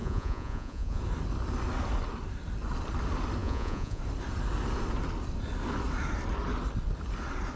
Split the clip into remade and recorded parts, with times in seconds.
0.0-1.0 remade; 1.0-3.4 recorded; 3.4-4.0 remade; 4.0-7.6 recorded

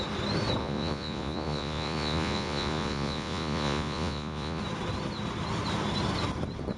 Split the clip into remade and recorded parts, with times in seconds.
0.0-0.6 recorded; 0.6-4.6 remade; 4.6-6.8 recorded

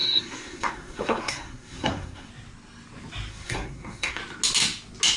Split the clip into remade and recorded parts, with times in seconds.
0.0-2.3 remade; 2.3-3.3 recorded; 3.3-4.2 remade; 4.2-5.2 recorded

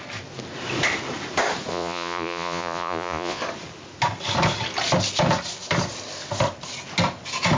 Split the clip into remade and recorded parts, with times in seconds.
0.0-1.7 recorded; 1.7-3.4 remade; 3.4-7.6 recorded

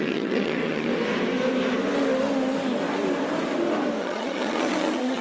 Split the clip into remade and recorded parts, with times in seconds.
0.0-0.9 remade; 0.9-4.0 recorded; 4.0-5.2 remade

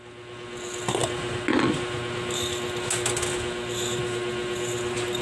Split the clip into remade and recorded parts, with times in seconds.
0.0-5.2 recorded